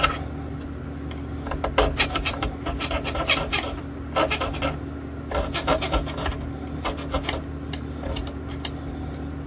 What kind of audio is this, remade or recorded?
recorded